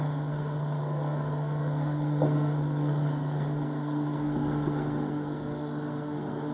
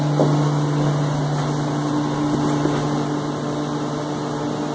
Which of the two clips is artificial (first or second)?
first